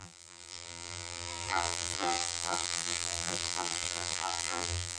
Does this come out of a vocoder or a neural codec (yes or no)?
yes